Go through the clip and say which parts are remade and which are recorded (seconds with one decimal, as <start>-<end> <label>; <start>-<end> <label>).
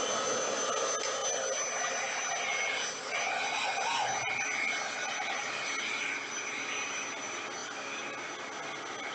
0.0-9.1 recorded